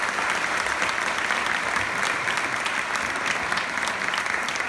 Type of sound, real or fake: real